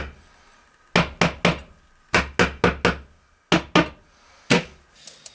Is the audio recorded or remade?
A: recorded